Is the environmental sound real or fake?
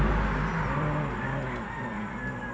real